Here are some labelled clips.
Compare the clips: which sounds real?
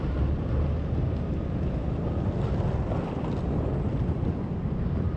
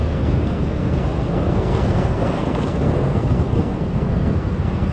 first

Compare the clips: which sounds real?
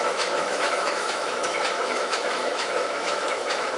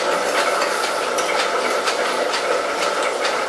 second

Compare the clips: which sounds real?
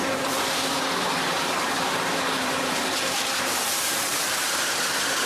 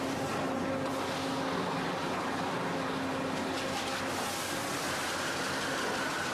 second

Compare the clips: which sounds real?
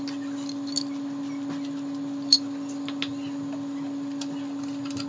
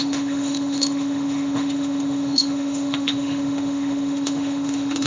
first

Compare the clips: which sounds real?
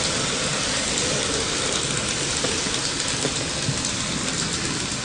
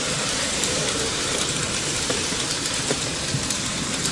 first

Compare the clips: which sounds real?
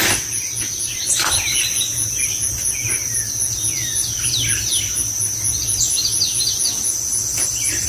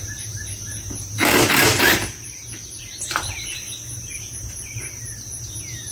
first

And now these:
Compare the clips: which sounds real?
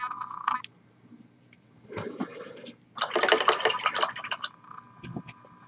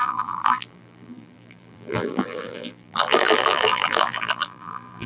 first